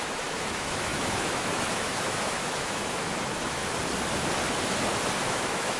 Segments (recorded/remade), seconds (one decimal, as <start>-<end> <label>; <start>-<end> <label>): 0.0-3.6 remade; 3.6-5.2 recorded; 5.2-5.8 remade